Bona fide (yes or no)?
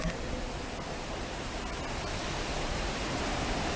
yes